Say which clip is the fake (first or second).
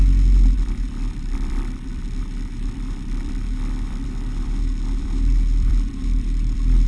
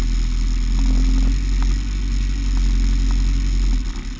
first